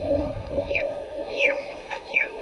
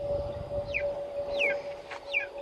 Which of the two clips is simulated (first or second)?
first